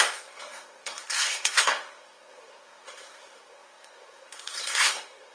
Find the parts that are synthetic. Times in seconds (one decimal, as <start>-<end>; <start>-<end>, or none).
0.0-5.3